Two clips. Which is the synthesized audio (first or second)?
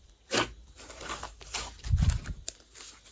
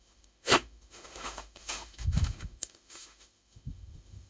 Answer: second